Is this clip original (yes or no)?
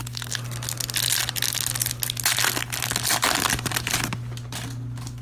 yes